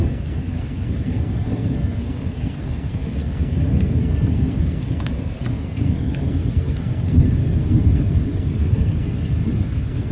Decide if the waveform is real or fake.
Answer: fake